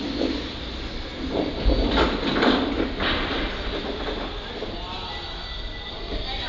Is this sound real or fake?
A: real